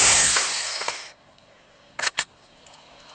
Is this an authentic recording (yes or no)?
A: no